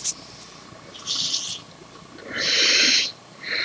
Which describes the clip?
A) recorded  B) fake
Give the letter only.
A